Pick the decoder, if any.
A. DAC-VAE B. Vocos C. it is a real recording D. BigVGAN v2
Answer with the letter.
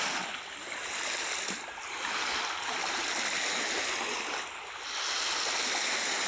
C